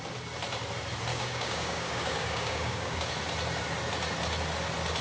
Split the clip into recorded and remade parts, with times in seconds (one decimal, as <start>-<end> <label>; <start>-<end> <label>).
0.0-1.1 recorded; 1.1-3.1 remade; 3.1-5.0 recorded